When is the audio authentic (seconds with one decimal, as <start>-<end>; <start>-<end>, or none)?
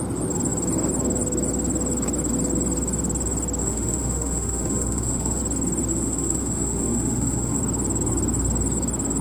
0.0-3.6; 5.4-5.9; 7.6-9.2